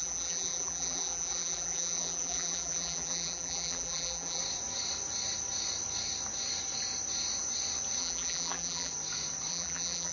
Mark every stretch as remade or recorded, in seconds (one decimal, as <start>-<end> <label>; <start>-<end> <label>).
0.0-4.4 remade; 4.4-8.0 recorded; 8.0-8.9 remade; 8.9-9.5 recorded; 9.5-10.1 remade